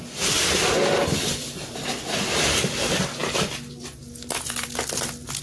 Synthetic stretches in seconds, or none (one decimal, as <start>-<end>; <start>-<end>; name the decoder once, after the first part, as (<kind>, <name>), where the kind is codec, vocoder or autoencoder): none